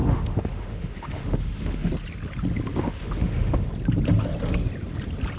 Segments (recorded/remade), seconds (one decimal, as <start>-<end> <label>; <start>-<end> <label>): 0.0-1.9 remade; 1.9-2.7 recorded; 2.7-3.7 remade; 3.7-5.4 recorded